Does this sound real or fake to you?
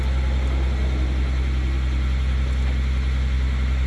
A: real